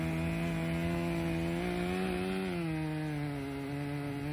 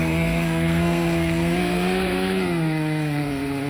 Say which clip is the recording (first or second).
first